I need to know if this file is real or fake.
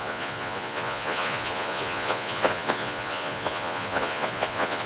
fake